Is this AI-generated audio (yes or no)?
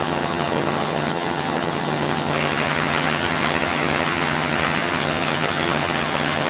yes